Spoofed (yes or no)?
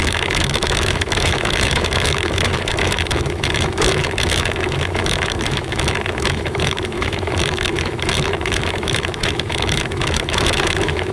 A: yes